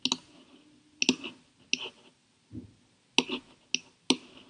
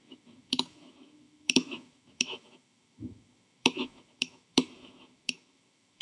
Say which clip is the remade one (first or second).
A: second